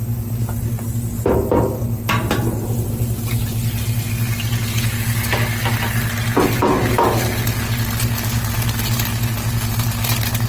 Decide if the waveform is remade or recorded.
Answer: recorded